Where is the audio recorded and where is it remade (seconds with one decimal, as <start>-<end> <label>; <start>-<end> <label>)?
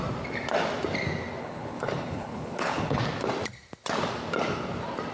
0.0-1.4 recorded; 1.4-3.0 remade; 3.0-5.1 recorded